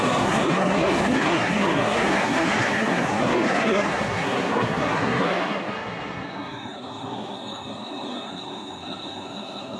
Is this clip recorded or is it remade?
remade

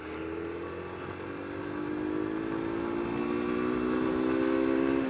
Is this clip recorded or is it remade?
recorded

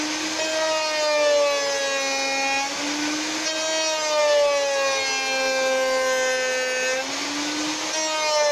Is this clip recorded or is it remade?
recorded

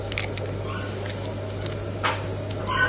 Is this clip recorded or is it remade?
recorded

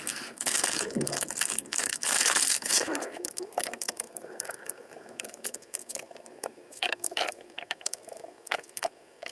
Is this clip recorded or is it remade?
remade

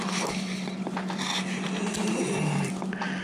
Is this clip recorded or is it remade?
recorded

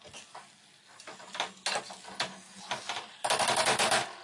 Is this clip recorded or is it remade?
recorded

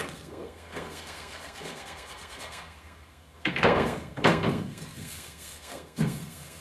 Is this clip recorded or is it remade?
remade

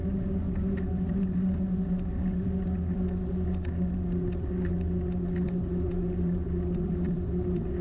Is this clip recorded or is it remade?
recorded